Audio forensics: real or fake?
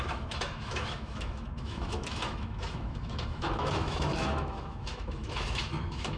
fake